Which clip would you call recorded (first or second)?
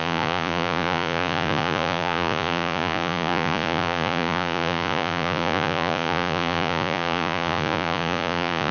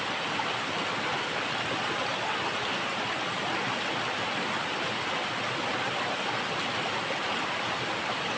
second